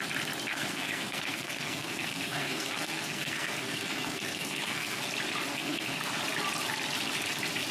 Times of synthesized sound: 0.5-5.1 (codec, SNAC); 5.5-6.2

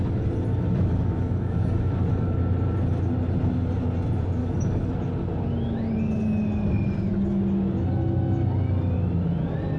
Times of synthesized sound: 0.5-2.4 (codec, DAC); 4.4-4.9